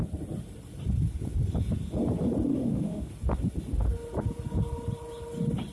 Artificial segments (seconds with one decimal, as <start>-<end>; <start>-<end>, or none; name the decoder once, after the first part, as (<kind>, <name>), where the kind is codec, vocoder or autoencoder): 2.5-3.1 (autoencoder, DAC-VAE)